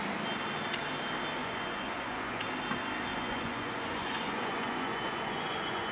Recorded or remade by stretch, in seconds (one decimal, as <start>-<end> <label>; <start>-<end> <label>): 0.0-1.4 recorded; 1.4-2.4 remade; 2.4-3.1 recorded; 3.1-5.9 remade